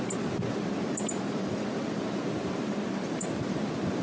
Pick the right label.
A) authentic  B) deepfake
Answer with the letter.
A